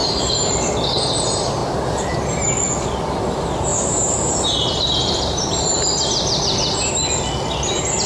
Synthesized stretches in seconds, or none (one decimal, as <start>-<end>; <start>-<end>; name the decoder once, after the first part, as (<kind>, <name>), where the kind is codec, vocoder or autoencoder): 0.0-0.7 (vocoder, BigVGAN v2); 3.7-6.0